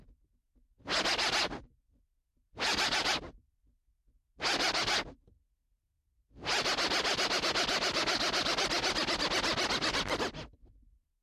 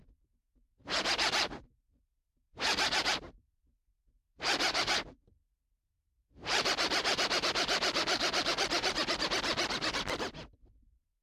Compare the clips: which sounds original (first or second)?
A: first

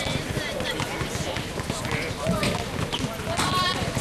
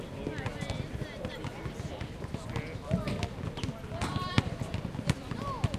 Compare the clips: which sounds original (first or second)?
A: second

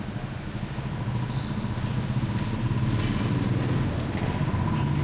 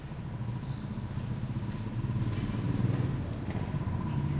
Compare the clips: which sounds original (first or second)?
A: first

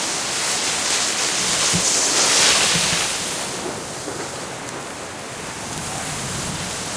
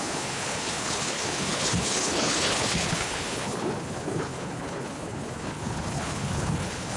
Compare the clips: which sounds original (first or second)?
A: first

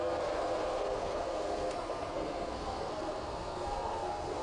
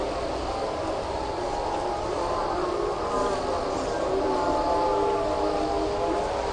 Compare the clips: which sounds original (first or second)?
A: second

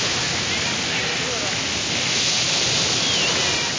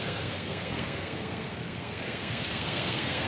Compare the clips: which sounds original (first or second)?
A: first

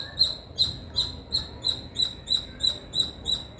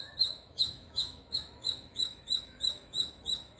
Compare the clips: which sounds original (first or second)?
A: first